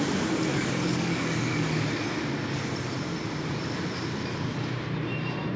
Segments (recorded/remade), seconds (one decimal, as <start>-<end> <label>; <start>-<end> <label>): 0.0-0.5 recorded; 0.5-1.9 remade; 1.9-5.6 recorded